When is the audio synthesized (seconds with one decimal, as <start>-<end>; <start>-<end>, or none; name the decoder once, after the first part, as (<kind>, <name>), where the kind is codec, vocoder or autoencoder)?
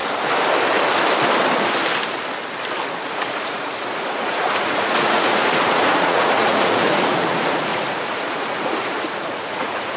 3.0-10.0 (vocoder, Vocos)